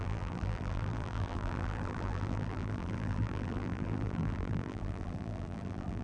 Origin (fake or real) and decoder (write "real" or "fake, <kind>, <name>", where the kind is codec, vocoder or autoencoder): fake, vocoder, BigVGAN v2